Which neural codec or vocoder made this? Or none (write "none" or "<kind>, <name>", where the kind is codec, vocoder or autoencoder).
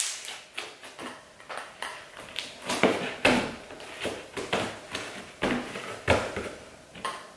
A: none